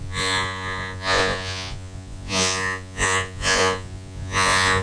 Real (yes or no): no